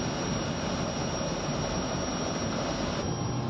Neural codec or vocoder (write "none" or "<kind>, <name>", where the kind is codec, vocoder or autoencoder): none